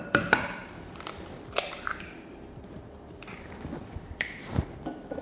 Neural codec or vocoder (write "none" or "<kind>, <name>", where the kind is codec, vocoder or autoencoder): vocoder, BigVGAN v2